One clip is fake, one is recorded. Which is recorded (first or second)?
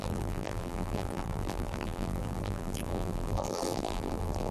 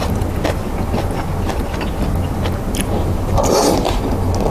second